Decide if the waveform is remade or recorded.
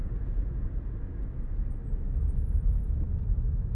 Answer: recorded